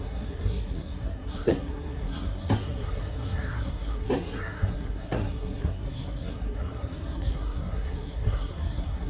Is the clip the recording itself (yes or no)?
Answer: no